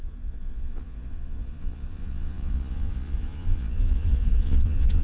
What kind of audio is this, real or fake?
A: fake